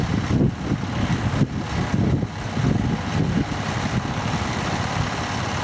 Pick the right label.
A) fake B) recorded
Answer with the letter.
B